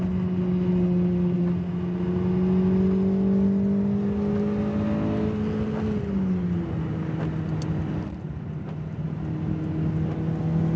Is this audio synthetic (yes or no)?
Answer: no